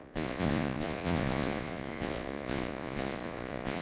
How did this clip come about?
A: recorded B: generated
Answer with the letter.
B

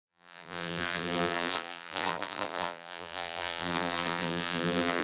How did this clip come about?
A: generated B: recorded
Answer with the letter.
A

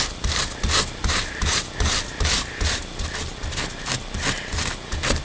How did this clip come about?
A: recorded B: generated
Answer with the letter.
B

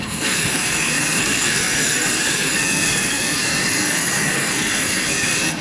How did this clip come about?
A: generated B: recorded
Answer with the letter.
A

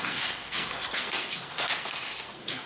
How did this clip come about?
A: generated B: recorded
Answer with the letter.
A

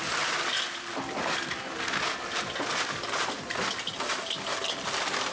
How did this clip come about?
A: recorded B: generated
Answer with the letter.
A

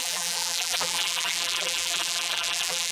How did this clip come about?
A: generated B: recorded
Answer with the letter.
A